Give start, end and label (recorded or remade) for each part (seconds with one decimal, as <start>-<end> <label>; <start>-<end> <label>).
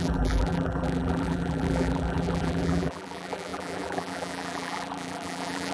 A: 0.0-5.7 remade